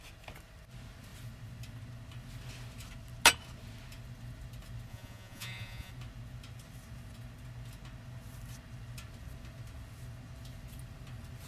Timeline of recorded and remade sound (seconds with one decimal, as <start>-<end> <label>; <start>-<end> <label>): 0.0-4.9 recorded; 4.9-5.9 remade; 5.9-11.5 recorded